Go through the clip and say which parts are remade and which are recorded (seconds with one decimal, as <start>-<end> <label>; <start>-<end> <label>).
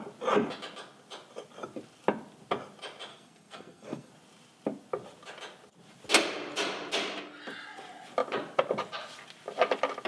0.0-3.1 recorded; 3.1-4.1 remade; 4.1-10.1 recorded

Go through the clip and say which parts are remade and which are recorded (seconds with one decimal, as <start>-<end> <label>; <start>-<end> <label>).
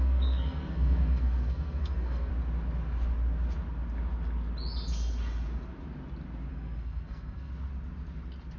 0.0-2.3 remade; 2.3-6.5 recorded; 6.5-7.5 remade; 7.5-8.6 recorded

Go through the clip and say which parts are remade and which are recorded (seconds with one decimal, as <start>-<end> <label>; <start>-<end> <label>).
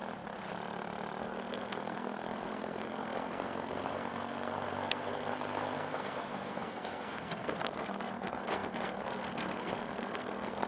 0.0-1.2 recorded; 1.2-10.7 remade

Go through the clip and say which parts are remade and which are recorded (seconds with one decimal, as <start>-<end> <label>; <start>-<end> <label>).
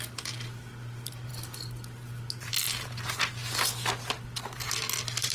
0.0-5.3 recorded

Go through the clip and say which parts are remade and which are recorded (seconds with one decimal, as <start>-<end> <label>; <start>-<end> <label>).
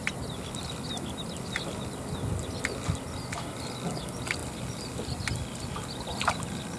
0.0-6.8 recorded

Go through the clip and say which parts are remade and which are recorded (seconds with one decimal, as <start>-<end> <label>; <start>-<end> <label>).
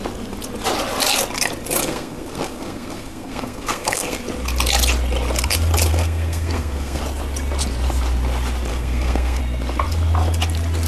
0.0-1.8 recorded; 1.8-4.2 remade; 4.2-5.9 recorded; 5.9-7.0 remade; 7.0-8.7 recorded; 8.7-9.4 remade; 9.4-10.9 recorded